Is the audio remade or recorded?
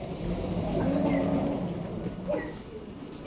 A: recorded